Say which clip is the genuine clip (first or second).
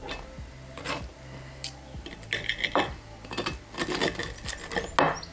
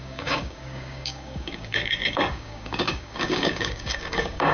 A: first